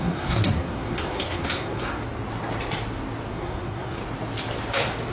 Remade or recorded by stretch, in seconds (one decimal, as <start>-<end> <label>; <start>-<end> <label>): 0.0-2.0 remade; 2.0-3.3 recorded; 3.3-4.0 remade; 4.0-5.1 recorded